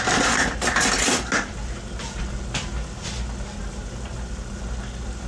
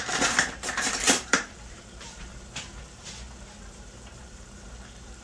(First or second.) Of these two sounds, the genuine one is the first